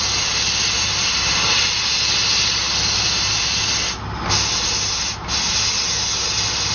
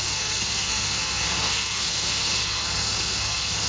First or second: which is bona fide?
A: first